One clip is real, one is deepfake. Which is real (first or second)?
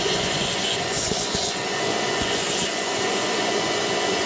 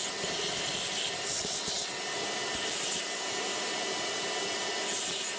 second